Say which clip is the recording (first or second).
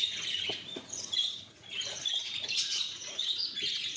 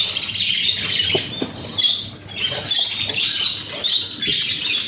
second